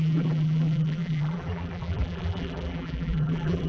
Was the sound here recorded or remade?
remade